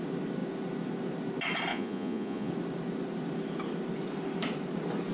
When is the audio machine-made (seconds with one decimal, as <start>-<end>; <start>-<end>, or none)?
1.7-2.5